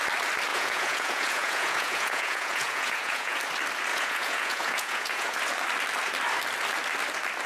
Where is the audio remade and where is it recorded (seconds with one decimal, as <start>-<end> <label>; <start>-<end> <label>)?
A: 0.0-0.5 recorded; 0.5-3.4 remade; 3.4-3.9 recorded; 3.9-5.4 remade; 5.4-7.5 recorded